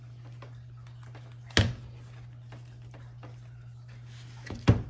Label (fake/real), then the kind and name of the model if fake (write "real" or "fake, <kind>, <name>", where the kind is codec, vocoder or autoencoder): real